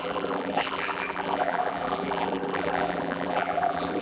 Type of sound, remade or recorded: remade